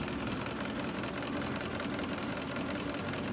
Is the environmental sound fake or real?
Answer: real